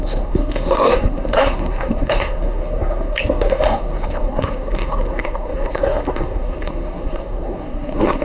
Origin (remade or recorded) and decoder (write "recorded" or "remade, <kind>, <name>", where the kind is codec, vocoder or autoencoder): remade, codec, SNAC